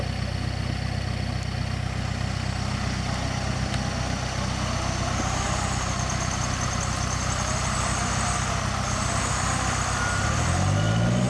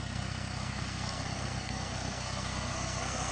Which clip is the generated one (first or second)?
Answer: second